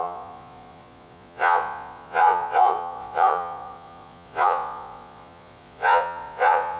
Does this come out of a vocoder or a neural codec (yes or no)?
yes